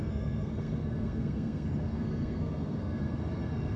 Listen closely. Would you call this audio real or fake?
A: fake